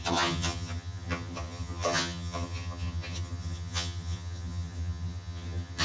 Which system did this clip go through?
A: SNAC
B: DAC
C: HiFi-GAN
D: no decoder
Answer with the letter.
C